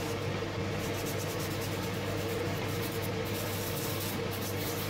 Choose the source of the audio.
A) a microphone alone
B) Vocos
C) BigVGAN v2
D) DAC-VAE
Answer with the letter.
A